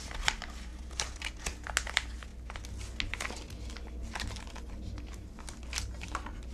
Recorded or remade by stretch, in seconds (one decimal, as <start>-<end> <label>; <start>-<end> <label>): 0.0-0.7 recorded; 0.7-1.2 remade; 1.2-6.5 recorded